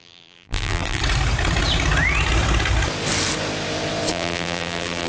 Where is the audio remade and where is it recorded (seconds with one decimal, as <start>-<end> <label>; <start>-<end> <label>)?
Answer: 0.0-1.0 remade; 1.0-4.1 recorded; 4.1-5.1 remade